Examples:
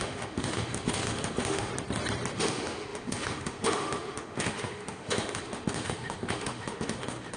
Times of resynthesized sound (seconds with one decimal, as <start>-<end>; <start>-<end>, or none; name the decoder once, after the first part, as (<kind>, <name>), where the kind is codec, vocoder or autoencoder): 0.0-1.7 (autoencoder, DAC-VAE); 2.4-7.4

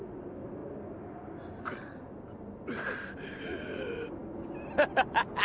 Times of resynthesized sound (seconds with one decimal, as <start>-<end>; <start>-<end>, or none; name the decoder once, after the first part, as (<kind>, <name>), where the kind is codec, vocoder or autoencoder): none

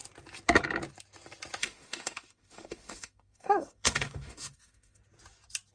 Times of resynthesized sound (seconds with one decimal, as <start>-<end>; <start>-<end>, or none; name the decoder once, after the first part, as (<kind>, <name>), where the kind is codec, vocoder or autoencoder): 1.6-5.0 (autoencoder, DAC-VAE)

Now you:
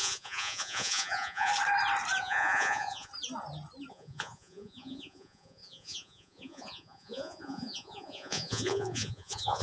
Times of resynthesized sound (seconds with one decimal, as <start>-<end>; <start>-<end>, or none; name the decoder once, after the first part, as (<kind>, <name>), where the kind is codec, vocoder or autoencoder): 0.0-1.5 (vocoder, Vocos); 2.2-3.1; 3.9-9.6